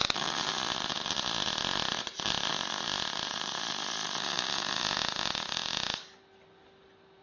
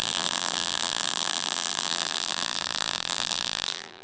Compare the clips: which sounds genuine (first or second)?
first